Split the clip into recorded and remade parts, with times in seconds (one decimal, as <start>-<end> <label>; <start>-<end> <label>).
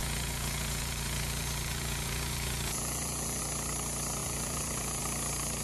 0.0-3.4 remade; 3.4-4.2 recorded; 4.2-5.0 remade; 5.0-5.6 recorded